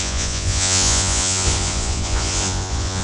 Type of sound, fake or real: fake